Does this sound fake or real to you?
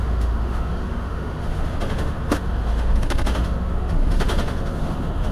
fake